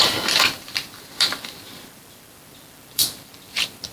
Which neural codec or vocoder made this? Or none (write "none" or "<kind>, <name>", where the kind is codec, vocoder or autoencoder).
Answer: vocoder, BigVGAN v2